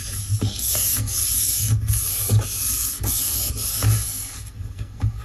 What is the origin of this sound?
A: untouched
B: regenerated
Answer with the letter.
B